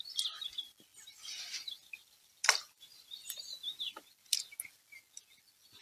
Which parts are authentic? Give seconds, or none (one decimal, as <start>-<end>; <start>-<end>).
0.0-0.9; 4.4-5.8